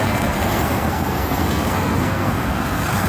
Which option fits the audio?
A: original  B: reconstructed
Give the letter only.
B